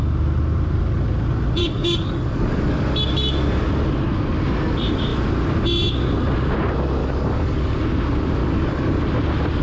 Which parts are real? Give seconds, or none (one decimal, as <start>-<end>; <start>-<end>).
0.0-1.6; 2.7-7.0; 7.8-8.4; 9.0-9.6